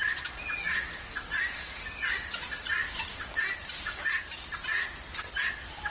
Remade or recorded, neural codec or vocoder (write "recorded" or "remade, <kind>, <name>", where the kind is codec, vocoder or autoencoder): recorded